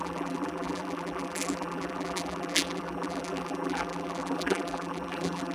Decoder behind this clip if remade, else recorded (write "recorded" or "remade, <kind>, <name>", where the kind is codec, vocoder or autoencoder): remade, vocoder, BigVGAN v2